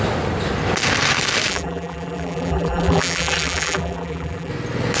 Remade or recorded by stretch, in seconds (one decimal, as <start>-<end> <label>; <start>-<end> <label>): 0.0-1.5 recorded; 1.5-4.5 remade; 4.5-5.0 recorded